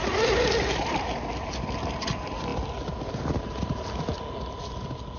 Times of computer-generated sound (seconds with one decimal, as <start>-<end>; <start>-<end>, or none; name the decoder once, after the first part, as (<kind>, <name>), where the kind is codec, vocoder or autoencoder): none

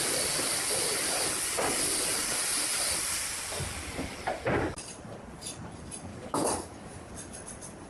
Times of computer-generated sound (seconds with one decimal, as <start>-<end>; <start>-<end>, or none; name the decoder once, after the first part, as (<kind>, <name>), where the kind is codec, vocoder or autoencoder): 6.1-7.1 (codec, DAC)